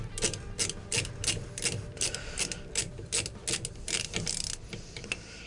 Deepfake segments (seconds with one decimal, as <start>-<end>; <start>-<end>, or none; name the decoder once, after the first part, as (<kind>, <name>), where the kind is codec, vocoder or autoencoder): none